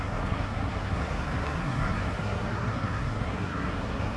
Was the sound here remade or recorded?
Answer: remade